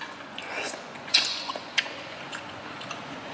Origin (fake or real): fake